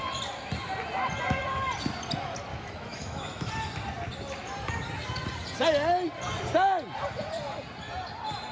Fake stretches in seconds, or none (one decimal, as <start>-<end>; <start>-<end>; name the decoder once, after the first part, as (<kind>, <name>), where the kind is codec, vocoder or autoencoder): 2.5-3.5 (autoencoder, DAC-VAE)